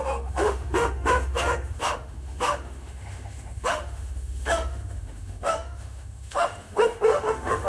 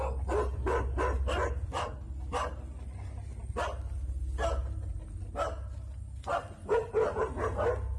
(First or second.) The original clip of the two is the second